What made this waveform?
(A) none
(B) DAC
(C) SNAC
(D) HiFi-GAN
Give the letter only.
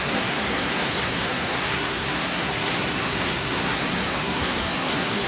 C